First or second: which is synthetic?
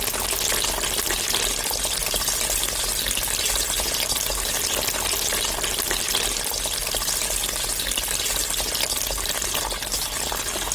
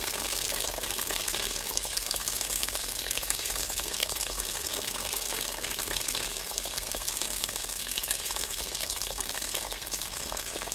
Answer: second